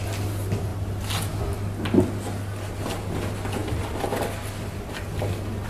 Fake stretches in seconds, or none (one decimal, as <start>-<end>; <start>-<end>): none